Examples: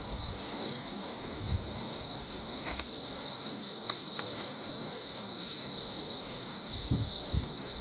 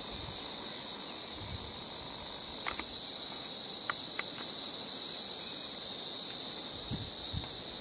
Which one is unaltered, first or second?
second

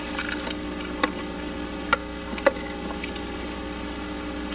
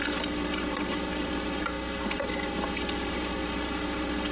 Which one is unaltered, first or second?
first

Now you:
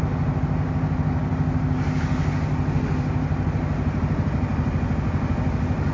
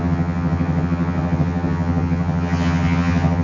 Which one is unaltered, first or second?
first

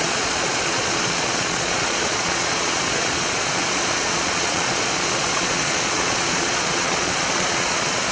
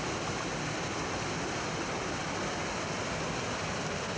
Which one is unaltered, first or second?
second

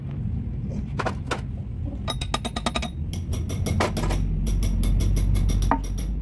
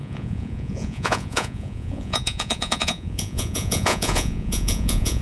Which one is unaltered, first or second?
first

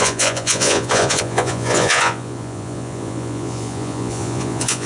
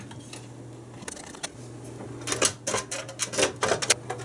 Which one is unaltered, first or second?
second